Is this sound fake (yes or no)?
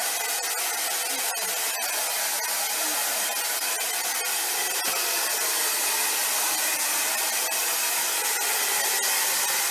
no